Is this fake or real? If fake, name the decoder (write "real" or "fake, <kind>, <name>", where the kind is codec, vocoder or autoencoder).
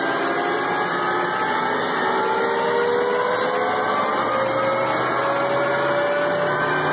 real